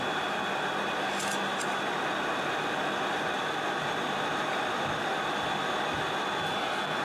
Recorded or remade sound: recorded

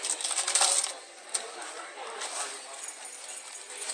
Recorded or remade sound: recorded